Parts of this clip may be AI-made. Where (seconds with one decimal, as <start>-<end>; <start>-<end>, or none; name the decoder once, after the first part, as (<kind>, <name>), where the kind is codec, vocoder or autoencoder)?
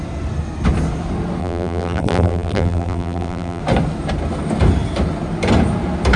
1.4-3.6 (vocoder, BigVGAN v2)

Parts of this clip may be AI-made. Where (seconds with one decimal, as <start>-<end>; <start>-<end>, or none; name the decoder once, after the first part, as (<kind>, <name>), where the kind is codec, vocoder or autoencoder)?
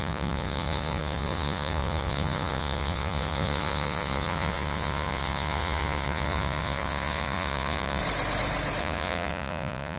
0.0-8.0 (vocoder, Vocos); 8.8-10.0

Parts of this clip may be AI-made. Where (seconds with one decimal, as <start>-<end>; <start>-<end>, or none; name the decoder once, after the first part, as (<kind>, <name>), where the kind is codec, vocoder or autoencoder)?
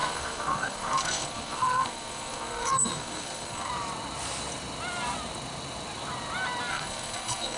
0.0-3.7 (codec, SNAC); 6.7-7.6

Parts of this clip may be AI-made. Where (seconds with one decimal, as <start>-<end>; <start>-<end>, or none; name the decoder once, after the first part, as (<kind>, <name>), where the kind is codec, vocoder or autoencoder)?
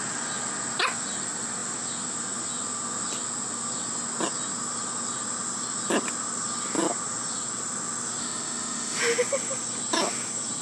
8.2-9.0 (autoencoder, DAC-VAE)